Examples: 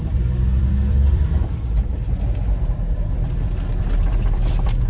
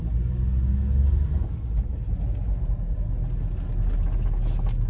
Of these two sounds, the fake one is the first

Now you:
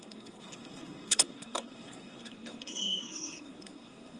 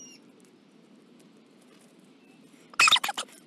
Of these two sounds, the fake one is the first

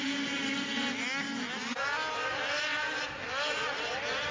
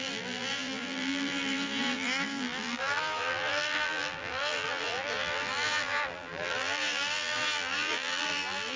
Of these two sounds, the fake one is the second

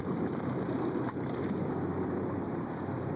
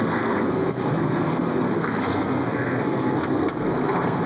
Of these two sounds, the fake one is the second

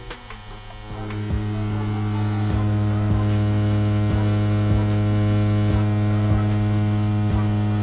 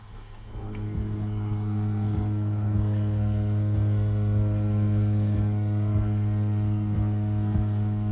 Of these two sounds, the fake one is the second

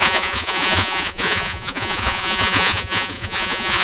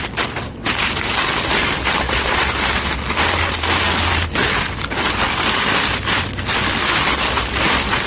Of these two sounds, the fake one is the first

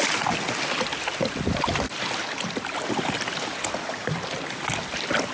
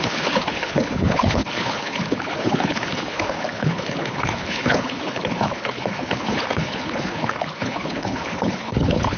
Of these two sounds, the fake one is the second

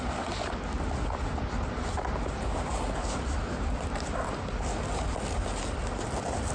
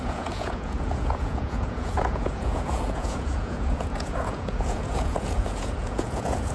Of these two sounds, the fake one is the second